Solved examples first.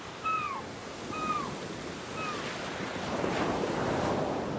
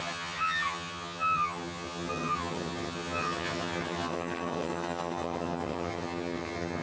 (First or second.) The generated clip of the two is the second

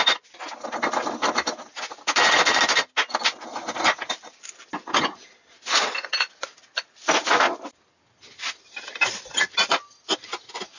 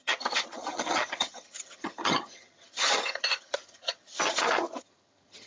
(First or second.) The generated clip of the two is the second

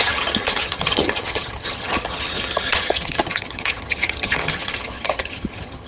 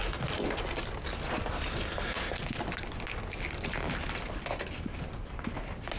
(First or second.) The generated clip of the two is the first